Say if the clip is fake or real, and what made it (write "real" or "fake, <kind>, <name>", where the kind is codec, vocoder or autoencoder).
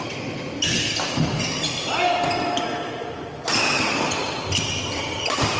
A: real